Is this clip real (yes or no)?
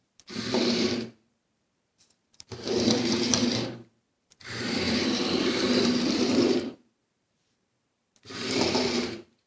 no